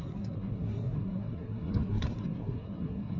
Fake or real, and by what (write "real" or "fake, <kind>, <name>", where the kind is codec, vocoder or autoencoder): fake, codec, SNAC